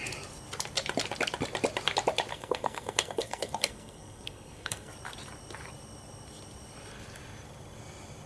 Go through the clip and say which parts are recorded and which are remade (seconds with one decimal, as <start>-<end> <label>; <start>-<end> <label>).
0.0-2.3 recorded; 2.3-4.9 remade; 4.9-8.3 recorded

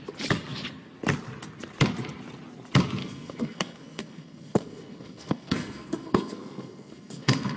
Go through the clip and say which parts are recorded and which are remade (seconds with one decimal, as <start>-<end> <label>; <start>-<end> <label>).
0.0-3.0 recorded; 3.0-7.6 remade